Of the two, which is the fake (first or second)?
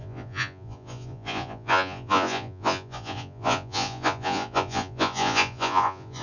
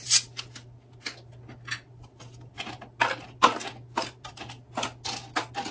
first